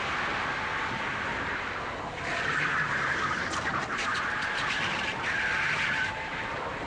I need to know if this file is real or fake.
real